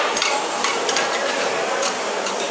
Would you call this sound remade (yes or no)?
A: yes